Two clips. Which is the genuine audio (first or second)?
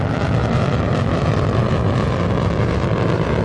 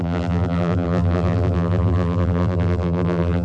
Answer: first